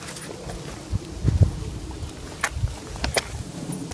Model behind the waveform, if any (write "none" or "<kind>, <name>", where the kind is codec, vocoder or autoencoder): none